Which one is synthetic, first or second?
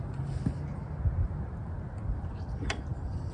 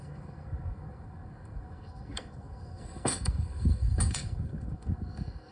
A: second